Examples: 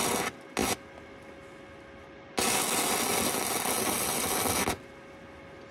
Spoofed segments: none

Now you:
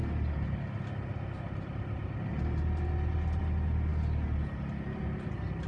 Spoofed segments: none

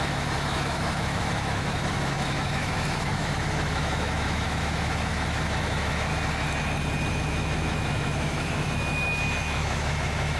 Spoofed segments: 0.0-6.1; 7.1-10.4

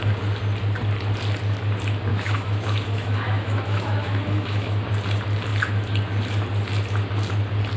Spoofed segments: 2.1-4.9

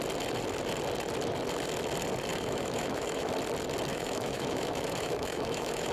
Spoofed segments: 2.3-3.3; 3.9-5.9